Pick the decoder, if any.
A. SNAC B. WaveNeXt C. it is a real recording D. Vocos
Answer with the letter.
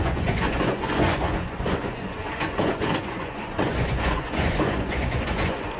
D